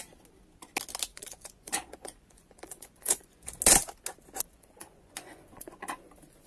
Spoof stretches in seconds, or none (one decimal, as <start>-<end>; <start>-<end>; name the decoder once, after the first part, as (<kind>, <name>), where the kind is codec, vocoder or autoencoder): 1.1-3.6 (vocoder, Vocos); 4.5-6.1